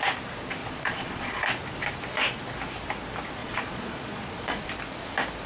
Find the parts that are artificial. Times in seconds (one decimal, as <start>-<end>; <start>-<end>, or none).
0.6-1.3; 3.4-4.7